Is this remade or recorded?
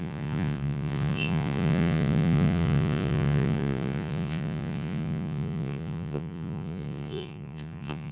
remade